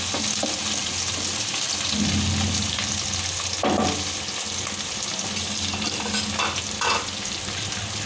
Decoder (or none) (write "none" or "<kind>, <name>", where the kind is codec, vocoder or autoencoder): none